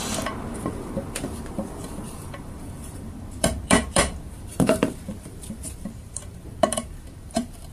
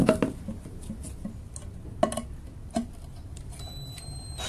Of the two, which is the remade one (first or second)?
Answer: first